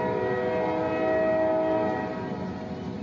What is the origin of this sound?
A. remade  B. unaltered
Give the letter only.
B